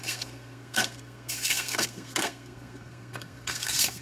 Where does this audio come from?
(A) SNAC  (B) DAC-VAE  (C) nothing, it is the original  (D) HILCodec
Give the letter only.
A